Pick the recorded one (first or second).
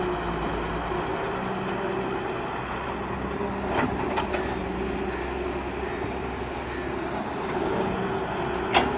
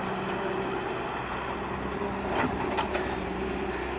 first